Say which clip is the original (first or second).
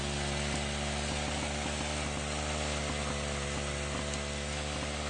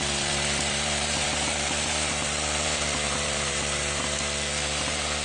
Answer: first